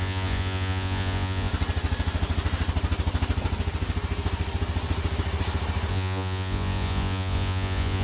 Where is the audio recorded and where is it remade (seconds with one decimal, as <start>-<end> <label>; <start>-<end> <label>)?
0.0-1.5 remade; 1.5-5.9 recorded; 5.9-8.0 remade